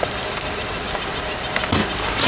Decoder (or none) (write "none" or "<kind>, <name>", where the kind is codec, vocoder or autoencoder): none